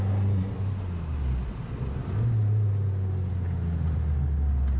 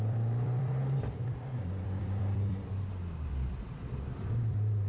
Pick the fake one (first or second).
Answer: second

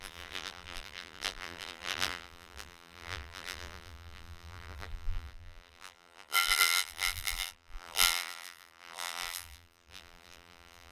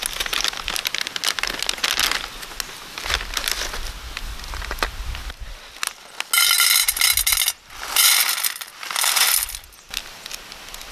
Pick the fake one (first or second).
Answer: first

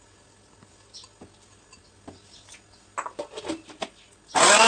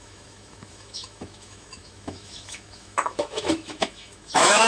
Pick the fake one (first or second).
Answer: second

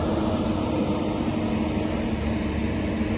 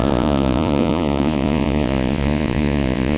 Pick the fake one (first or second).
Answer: second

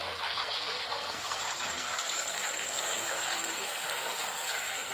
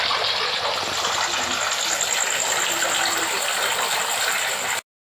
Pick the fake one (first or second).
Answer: first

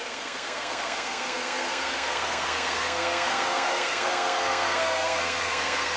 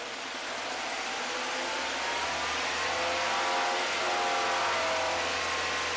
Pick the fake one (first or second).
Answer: first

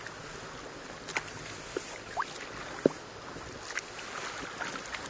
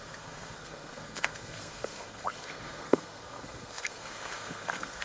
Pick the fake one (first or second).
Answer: second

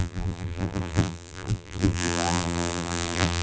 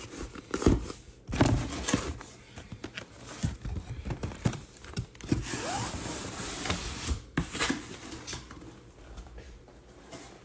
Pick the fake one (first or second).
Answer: first